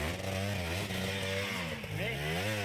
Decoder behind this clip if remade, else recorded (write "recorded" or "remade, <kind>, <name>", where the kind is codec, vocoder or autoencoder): recorded